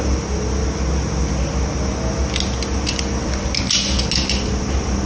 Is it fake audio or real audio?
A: real